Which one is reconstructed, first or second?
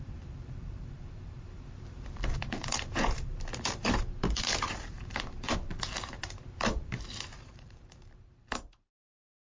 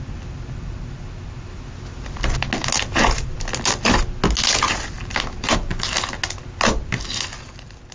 first